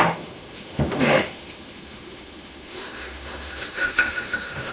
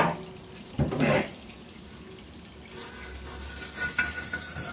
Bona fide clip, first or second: second